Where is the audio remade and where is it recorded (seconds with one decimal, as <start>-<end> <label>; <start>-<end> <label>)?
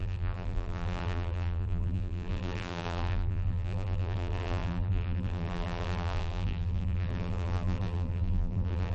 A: 0.0-8.9 remade